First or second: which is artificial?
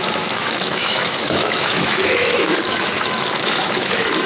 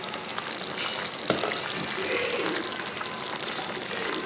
first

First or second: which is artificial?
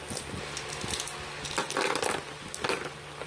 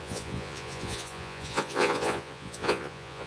second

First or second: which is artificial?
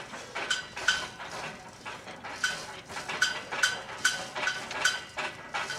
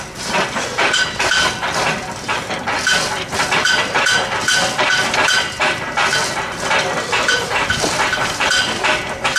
second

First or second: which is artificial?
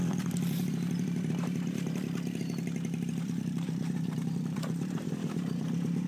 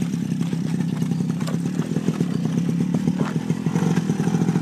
first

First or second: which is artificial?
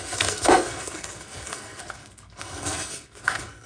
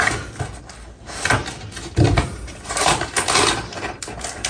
first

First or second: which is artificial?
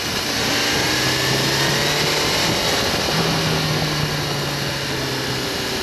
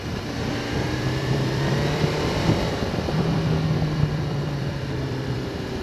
second